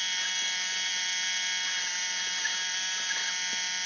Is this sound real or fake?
real